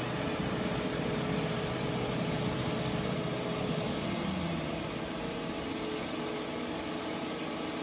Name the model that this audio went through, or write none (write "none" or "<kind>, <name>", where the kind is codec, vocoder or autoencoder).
none